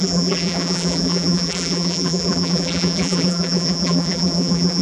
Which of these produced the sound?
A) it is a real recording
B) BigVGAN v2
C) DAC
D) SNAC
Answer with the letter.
B